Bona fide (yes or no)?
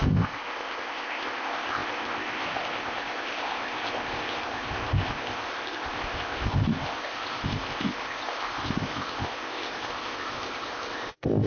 no